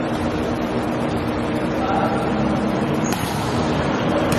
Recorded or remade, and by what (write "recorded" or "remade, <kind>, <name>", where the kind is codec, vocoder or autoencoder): remade, vocoder, BigVGAN v2